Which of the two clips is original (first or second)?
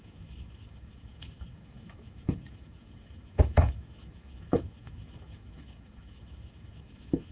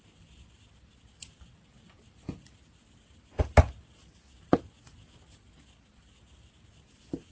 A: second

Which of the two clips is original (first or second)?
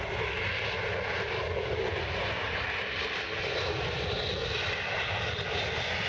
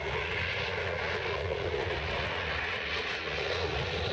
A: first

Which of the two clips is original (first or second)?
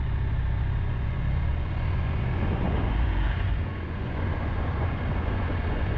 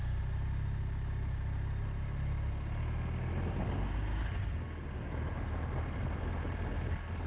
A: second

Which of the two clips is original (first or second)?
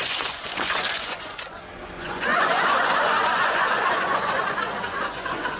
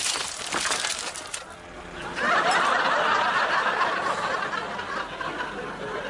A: second